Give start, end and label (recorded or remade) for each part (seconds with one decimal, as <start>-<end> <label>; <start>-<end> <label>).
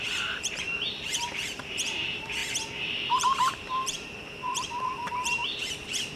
0.0-2.4 remade; 2.4-3.1 recorded; 3.1-6.2 remade